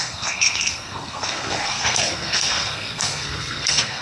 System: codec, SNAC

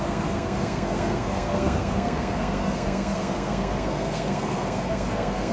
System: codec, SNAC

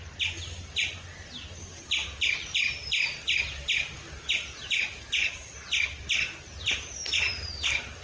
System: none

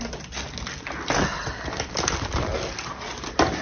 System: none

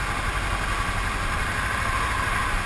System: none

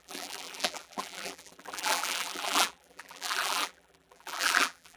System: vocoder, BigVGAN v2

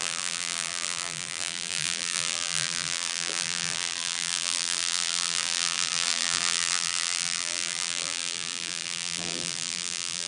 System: vocoder, BigVGAN v2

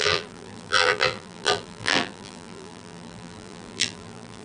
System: vocoder, BigVGAN v2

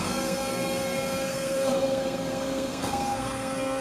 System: codec, SNAC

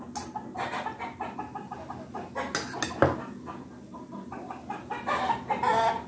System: none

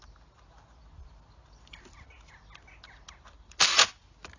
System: none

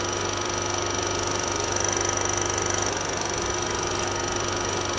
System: vocoder, BigVGAN v2